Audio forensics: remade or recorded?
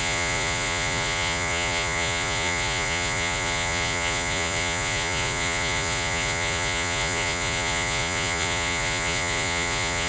remade